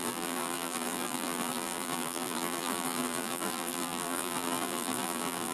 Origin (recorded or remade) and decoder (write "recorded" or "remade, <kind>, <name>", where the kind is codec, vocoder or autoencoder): remade, vocoder, BigVGAN v2